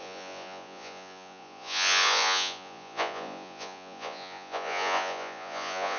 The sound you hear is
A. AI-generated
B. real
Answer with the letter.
A